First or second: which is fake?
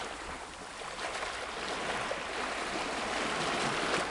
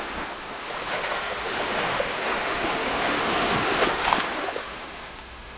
second